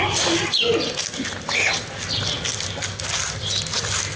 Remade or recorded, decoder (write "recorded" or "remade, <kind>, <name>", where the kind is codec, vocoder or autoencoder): recorded